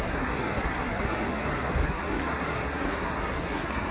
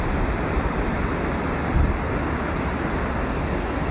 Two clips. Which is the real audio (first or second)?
second